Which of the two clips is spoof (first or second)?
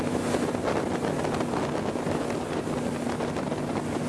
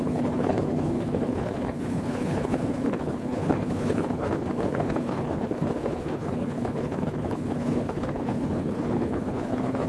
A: second